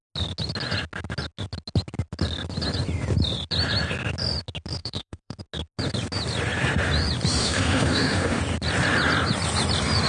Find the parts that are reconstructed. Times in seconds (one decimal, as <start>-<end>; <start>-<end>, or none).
4.8-5.4; 7.4-8.4